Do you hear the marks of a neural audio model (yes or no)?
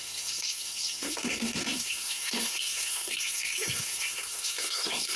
yes